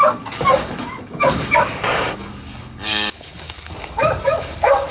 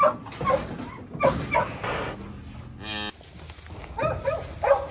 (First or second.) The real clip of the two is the second